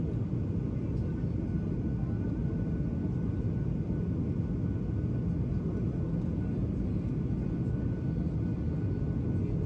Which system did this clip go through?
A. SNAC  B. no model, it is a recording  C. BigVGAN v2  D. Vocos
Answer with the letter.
B